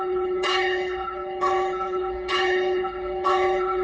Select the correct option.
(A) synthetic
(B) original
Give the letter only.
A